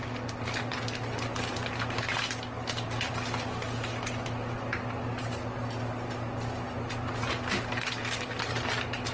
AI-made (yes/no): no